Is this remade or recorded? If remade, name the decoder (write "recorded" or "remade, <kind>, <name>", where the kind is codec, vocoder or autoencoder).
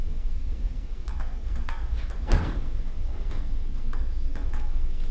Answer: remade, codec, SNAC